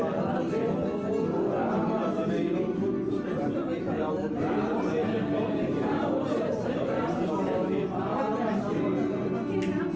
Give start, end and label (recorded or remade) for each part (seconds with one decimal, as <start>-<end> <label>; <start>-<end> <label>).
0.0-3.4 recorded; 3.4-7.7 remade; 7.7-10.0 recorded